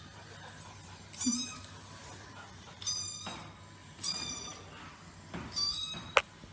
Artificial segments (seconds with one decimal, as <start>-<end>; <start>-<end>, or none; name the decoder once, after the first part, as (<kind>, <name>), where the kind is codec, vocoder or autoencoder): 2.0-2.8 (vocoder, Vocos); 3.8-4.6